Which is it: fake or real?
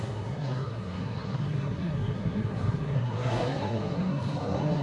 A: fake